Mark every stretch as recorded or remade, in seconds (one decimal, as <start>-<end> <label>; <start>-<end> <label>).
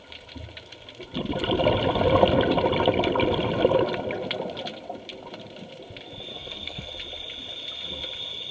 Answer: 0.0-6.3 recorded; 6.3-6.9 remade; 6.9-8.5 recorded